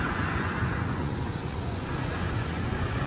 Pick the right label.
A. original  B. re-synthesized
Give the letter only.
B